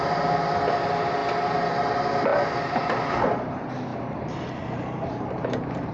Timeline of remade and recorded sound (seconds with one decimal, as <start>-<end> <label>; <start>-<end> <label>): 0.0-3.9 recorded; 3.9-5.9 remade